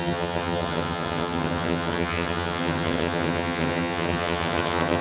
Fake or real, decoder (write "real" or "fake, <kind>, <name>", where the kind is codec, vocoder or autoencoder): fake, vocoder, HiFi-GAN